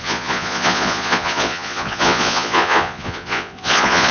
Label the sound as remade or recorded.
remade